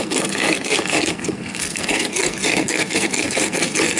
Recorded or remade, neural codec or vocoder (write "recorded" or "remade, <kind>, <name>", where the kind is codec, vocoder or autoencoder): remade, codec, SNAC